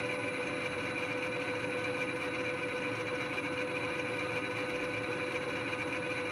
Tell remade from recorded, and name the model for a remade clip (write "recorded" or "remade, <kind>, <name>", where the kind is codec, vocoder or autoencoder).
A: recorded